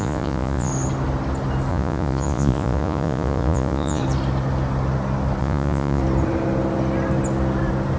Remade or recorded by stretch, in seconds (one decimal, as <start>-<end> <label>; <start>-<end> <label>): 0.0-0.7 remade; 0.7-1.7 recorded; 1.7-4.0 remade; 4.0-5.4 recorded; 5.4-6.0 remade; 6.0-8.0 recorded